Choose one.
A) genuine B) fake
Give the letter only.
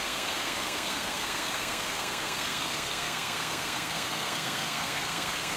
B